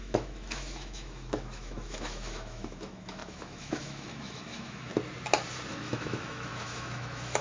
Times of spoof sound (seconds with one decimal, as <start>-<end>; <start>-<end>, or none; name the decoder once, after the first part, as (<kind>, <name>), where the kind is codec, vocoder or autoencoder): 0.0-4.9 (autoencoder, DAC-VAE); 5.7-7.4